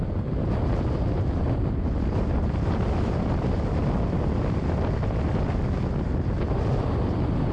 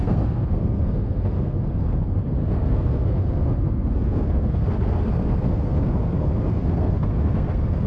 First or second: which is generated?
second